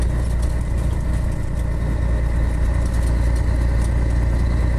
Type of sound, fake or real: real